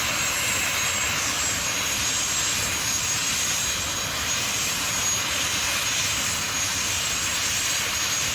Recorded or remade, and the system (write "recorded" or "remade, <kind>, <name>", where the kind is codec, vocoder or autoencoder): recorded